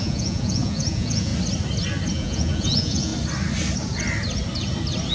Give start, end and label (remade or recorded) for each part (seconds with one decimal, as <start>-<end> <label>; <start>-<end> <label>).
0.0-1.3 remade; 1.3-2.1 recorded; 2.1-3.1 remade; 3.1-5.1 recorded